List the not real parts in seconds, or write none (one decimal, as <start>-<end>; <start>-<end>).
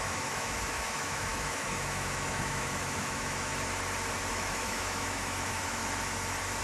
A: 0.0-3.5; 4.3-5.8